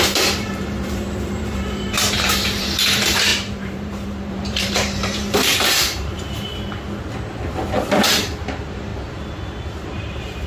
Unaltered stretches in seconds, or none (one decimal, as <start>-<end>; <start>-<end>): 6.5-8.4; 8.9-9.7